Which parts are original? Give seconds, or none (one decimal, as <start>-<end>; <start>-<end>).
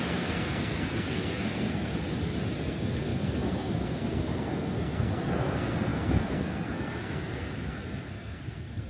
1.9-2.6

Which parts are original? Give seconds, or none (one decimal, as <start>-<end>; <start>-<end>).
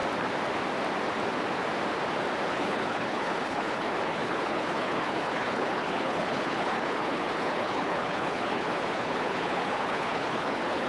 0.0-2.5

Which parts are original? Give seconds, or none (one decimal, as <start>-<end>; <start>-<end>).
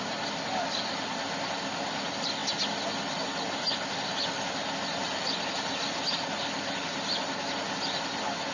0.0-8.5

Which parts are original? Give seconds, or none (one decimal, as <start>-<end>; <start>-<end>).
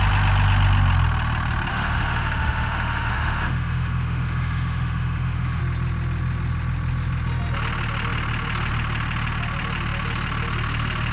0.0-1.7; 5.6-11.1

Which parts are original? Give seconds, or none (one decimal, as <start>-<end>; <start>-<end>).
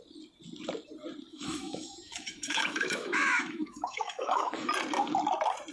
0.0-1.3; 4.7-5.7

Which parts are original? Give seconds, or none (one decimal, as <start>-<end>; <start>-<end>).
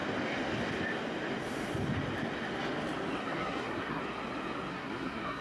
0.0-3.2; 4.0-4.7